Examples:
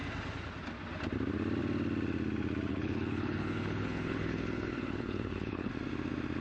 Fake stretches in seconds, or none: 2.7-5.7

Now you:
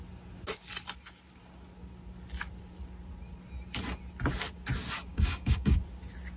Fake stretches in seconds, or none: 5.1-5.8

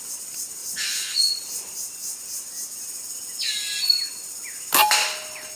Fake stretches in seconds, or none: none

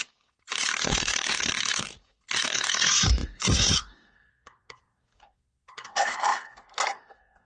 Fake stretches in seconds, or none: 0.0-7.5

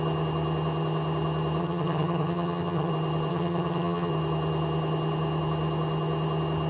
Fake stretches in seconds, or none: 1.6-2.9; 3.3-4.1

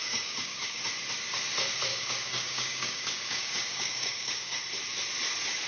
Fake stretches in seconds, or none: 0.0-0.8; 1.9-4.6

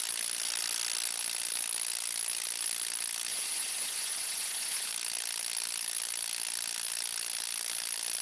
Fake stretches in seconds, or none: 3.3-4.9